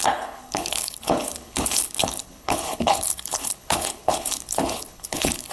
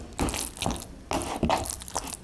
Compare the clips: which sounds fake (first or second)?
first